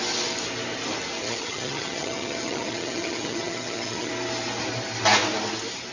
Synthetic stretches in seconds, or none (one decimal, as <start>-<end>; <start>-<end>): 1.2-4.1